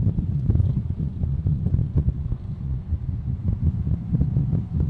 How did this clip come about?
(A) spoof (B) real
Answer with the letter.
A